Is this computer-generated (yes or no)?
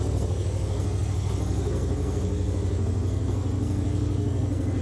yes